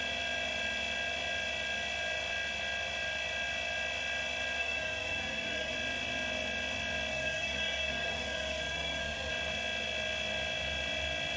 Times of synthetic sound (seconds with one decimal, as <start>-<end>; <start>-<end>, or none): 4.6-5.7; 7.1-9.3